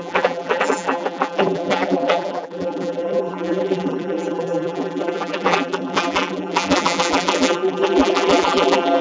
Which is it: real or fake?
fake